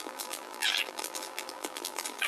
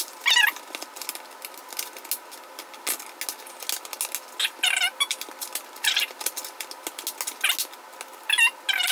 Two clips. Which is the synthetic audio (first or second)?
first